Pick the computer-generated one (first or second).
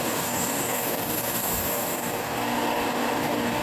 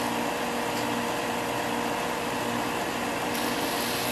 first